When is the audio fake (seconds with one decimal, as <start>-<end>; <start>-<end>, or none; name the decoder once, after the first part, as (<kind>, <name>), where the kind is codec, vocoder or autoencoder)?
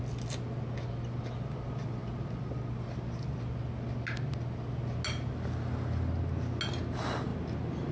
none